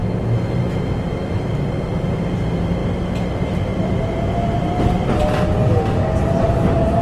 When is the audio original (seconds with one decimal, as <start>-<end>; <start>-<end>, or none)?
0.0-7.0